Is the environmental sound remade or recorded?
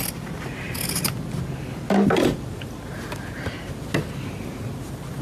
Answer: recorded